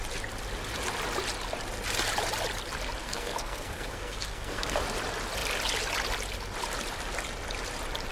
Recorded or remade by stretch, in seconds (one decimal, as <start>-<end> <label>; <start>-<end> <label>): 0.0-3.0 recorded; 3.0-4.8 remade; 4.8-8.1 recorded